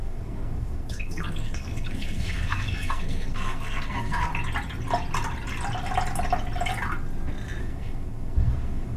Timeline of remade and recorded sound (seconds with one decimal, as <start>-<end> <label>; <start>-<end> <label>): 0.0-4.3 remade; 4.3-7.6 recorded; 7.6-9.0 remade